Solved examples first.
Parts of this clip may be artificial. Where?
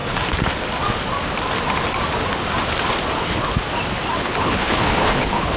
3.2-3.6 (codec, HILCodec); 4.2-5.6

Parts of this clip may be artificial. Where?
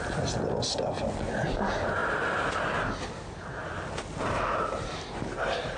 none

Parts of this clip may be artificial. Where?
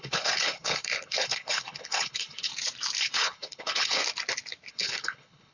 0.0-2.5 (codec, HILCodec); 3.0-4.0; 4.7-5.5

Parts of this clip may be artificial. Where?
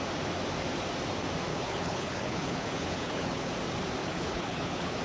1.5-3.5 (codec, HILCodec); 4.0-5.0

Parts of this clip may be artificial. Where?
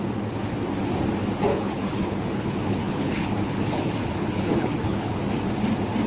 1.5-5.2 (codec, HILCodec)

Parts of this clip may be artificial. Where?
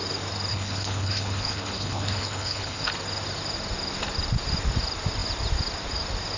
0.5-2.9 (codec, HILCodec)